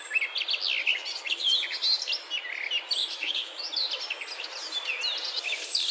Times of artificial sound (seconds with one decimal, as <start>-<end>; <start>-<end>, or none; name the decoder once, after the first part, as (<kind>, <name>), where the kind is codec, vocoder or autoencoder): 3.0-3.6 (vocoder, Vocos)